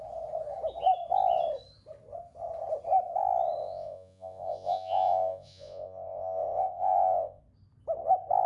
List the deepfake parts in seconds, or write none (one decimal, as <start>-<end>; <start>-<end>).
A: 3.6-7.4